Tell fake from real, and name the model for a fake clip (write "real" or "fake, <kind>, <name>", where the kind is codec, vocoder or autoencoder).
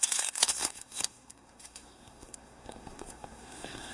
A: fake, codec, SNAC